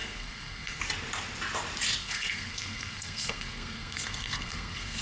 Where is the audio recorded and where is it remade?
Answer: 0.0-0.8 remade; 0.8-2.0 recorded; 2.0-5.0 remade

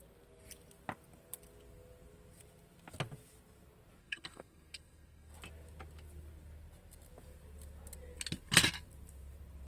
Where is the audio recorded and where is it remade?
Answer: 0.0-4.0 recorded; 4.0-5.3 remade; 5.3-9.7 recorded

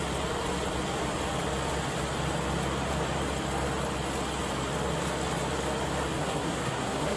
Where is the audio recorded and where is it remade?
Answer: 0.0-6.2 recorded; 6.2-7.2 remade